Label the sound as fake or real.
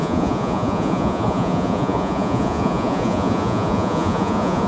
fake